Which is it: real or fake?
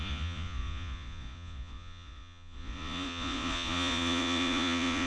fake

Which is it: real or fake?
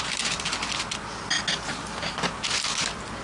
real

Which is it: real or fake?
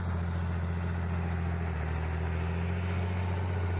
real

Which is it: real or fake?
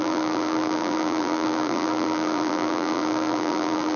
fake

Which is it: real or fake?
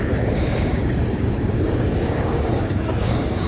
fake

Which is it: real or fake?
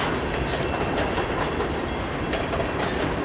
real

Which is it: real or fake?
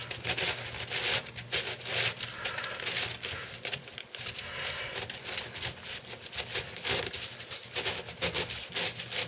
real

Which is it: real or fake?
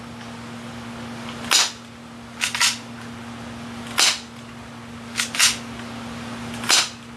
real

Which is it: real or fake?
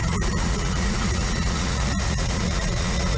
fake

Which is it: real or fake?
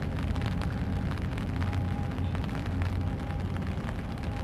fake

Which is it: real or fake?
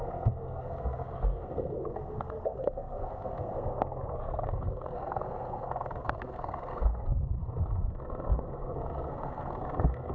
fake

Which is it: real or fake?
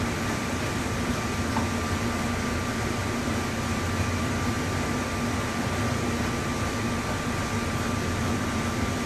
real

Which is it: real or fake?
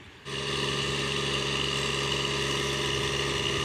real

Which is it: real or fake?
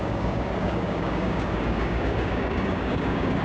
fake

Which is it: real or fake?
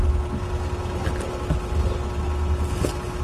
real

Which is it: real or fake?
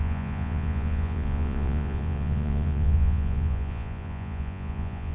fake